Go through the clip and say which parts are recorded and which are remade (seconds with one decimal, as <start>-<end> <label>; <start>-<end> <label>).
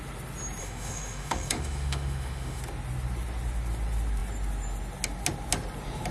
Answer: 0.0-0.6 recorded; 0.6-2.6 remade; 2.6-6.1 recorded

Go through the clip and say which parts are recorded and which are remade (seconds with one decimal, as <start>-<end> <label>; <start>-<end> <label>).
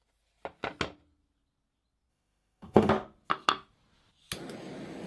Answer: 0.0-2.1 recorded; 2.1-2.9 remade; 2.9-5.1 recorded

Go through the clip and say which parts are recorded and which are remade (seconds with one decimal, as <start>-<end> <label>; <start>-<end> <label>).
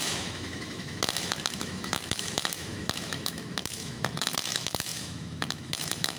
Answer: 0.0-6.2 remade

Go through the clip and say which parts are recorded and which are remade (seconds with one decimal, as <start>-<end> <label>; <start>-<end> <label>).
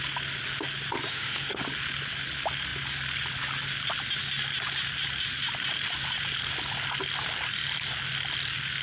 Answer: 0.0-1.1 recorded; 1.1-1.6 remade; 1.6-8.8 recorded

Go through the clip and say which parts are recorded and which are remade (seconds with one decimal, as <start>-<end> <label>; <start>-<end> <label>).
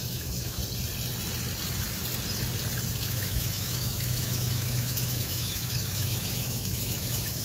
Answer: 0.0-0.6 remade; 0.6-3.0 recorded; 3.0-7.4 remade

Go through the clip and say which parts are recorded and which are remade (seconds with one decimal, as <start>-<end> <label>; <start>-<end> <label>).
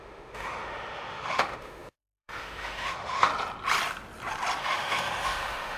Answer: 0.0-3.3 remade; 3.3-4.6 recorded; 4.6-5.8 remade